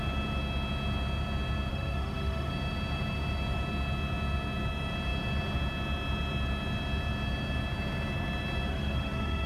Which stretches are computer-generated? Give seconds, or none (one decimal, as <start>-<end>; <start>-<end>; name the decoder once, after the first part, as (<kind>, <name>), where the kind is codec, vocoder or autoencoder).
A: 1.7-2.5 (autoencoder, DAC-VAE); 8.7-9.5